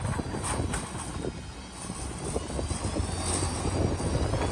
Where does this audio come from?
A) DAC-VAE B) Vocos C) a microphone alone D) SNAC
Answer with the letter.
C